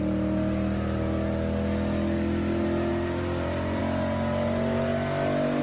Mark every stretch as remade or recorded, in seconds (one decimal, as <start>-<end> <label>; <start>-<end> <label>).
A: 0.0-2.9 recorded; 2.9-3.8 remade; 3.8-5.6 recorded